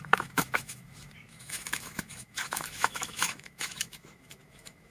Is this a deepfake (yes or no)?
yes